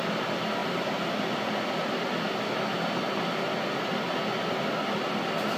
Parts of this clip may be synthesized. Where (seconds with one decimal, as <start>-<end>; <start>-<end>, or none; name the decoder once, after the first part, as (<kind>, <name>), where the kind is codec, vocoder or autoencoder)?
none